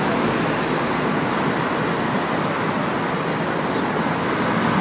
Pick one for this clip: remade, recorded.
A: recorded